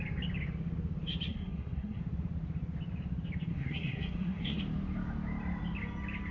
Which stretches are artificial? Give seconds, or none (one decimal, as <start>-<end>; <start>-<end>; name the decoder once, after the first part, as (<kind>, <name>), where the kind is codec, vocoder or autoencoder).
1.3-2.0 (codec, SNAC); 3.5-4.6